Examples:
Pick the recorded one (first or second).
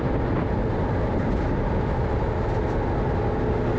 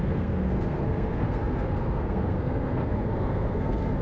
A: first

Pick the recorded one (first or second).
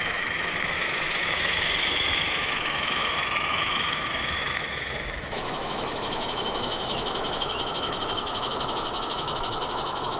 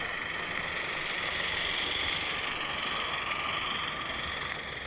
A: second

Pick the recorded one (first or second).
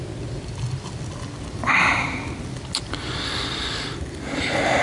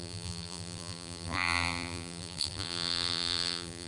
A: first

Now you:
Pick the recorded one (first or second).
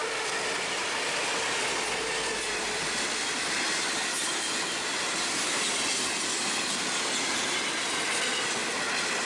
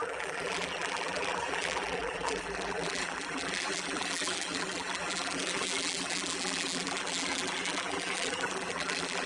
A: first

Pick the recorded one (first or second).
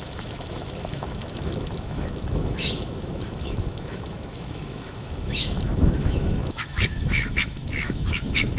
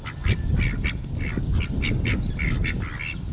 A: second